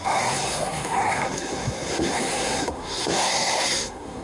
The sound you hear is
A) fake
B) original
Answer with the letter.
A